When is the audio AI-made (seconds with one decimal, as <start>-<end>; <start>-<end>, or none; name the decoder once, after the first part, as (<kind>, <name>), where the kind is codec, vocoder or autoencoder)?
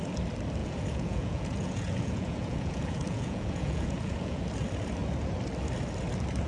0.6-4.4 (vocoder, Vocos)